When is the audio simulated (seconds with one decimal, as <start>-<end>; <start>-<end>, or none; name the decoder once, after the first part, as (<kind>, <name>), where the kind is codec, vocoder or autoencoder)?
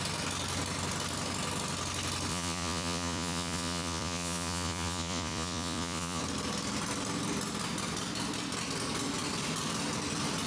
2.3-6.2 (vocoder, Vocos)